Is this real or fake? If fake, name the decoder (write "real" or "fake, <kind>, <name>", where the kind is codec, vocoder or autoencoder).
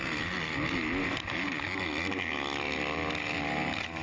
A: real